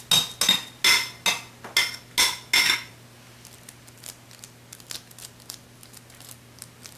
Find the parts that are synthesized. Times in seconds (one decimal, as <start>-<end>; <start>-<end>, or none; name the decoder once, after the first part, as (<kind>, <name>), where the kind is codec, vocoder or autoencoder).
none